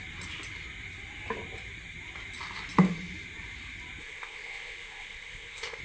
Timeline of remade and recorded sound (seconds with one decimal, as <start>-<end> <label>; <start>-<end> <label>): 0.0-4.0 recorded; 4.0-5.8 remade